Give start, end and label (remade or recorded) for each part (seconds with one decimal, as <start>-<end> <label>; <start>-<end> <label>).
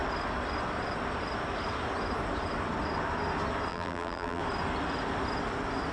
0.0-3.7 recorded; 3.7-4.4 remade; 4.4-5.9 recorded